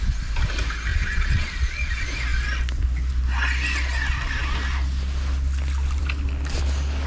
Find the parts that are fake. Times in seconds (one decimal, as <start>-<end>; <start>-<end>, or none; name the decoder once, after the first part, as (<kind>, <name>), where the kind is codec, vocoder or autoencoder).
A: 0.9-1.9 (vocoder, Vocos)